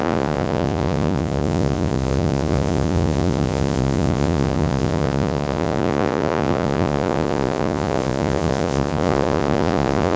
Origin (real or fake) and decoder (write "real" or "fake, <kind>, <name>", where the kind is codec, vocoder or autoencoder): fake, vocoder, Vocos